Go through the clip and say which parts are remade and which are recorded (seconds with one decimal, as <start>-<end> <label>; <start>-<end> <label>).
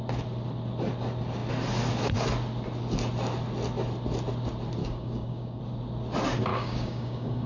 0.0-4.8 recorded; 4.8-5.6 remade; 5.6-6.5 recorded; 6.5-7.5 remade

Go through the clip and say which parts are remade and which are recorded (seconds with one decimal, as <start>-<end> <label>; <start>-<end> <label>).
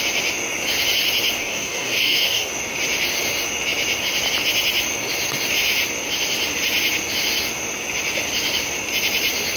0.0-1.4 recorded; 1.4-2.5 remade; 2.5-9.6 recorded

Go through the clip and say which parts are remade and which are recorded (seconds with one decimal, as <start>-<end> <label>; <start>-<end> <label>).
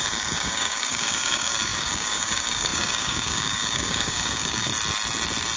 0.0-4.7 remade; 4.7-5.6 recorded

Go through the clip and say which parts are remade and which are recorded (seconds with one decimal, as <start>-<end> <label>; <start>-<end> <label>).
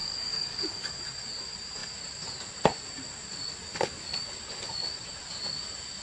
0.0-1.0 remade; 1.0-6.0 recorded